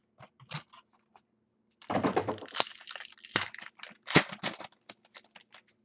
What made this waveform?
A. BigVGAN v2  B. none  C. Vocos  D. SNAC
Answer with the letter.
B